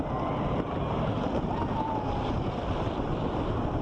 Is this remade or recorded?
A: recorded